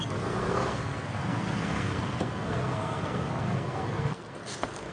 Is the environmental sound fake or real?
fake